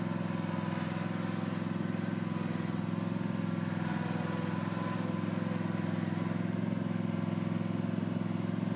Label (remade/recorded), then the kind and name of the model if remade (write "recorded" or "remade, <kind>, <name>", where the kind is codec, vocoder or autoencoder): recorded